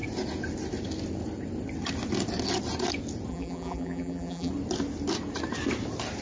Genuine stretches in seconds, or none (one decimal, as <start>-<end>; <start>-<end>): 0.0-3.3; 4.5-6.2